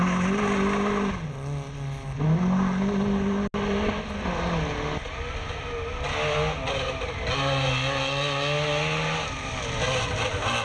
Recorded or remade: recorded